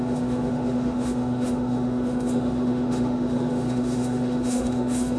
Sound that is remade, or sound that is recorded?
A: remade